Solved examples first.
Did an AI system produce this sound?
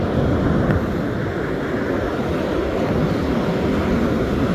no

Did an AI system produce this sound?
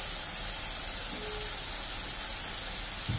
no